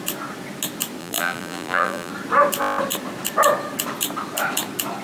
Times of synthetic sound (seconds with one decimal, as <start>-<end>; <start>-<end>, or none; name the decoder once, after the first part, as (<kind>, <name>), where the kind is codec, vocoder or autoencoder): 1.0-2.1 (vocoder, BigVGAN v2)